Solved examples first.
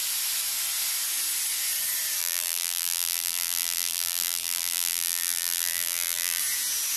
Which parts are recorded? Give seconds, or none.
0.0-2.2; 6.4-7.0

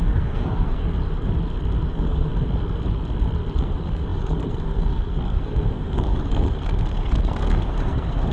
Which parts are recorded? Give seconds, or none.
0.8-1.9; 2.3-3.6

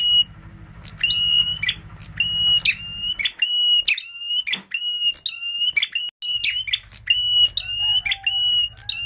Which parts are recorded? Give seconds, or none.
0.0-9.1

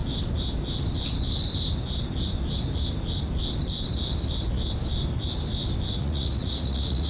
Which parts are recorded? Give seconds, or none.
0.0-5.9